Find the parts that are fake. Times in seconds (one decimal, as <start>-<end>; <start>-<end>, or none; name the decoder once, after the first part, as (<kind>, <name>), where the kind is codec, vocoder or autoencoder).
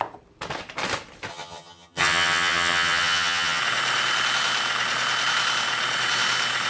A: 1.3-3.6 (vocoder, HiFi-GAN)